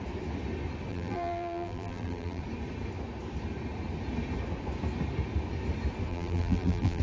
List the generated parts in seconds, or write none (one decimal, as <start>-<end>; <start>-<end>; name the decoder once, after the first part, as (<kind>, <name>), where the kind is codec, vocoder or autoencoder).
0.9-2.4 (vocoder, BigVGAN v2); 6.1-7.0